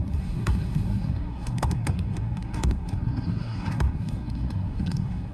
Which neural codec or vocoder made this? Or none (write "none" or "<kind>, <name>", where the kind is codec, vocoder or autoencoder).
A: codec, SNAC